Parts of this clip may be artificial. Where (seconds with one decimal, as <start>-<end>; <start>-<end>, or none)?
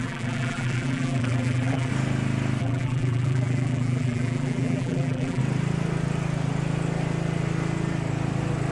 0.0-1.9; 2.6-5.4